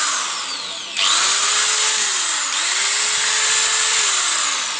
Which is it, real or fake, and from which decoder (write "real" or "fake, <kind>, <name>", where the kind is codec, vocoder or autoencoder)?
real